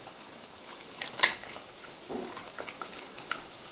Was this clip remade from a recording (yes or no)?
yes